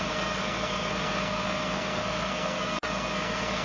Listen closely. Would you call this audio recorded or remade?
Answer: remade